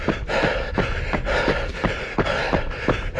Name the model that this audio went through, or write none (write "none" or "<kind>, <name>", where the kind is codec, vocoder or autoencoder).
none